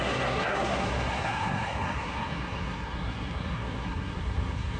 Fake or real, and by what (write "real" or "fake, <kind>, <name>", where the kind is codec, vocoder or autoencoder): fake, codec, SNAC